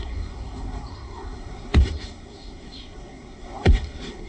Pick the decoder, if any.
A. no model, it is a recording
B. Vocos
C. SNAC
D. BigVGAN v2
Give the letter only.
C